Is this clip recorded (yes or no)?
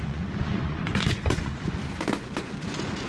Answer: no